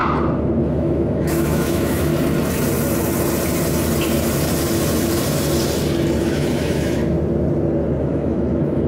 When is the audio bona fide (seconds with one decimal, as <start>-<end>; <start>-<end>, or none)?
0.0-0.6; 2.1-6.2; 7.0-8.0

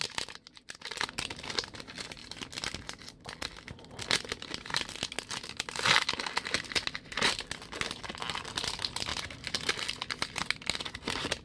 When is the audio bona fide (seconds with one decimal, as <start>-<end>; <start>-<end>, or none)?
0.0-11.4

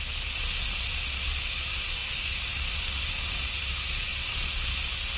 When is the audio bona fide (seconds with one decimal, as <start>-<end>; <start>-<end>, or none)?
0.0-5.2

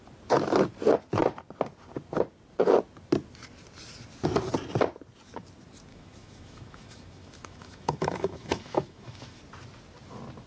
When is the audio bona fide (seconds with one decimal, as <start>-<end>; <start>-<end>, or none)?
0.0-5.9; 9.4-10.5

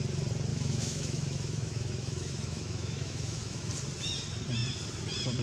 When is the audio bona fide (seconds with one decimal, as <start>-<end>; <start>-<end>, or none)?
0.0-0.5; 3.7-5.4

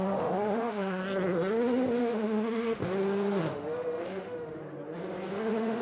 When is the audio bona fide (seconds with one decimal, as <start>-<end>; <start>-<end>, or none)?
1.0-2.0; 2.8-3.5; 4.6-5.3

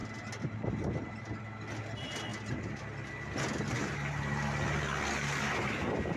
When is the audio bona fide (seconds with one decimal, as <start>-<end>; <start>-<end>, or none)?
0.0-6.2

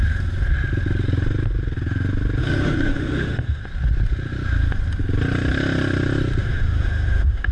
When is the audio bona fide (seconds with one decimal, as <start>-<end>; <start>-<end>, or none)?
0.0-2.4; 3.6-6.4